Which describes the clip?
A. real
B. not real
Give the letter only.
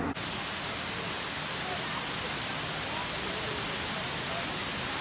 A